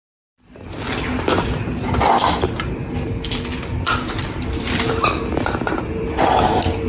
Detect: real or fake fake